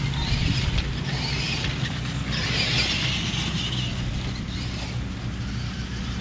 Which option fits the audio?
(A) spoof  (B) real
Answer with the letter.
B